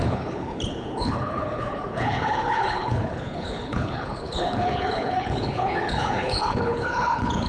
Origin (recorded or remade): remade